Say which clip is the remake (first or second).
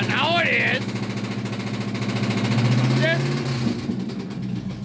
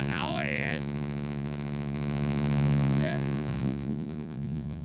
second